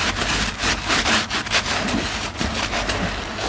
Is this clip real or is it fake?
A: fake